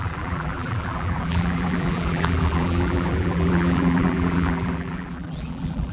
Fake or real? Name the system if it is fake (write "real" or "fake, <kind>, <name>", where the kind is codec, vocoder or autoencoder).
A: fake, vocoder, BigVGAN v2